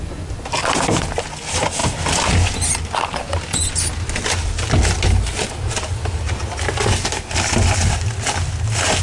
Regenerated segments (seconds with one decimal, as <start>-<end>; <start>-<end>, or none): none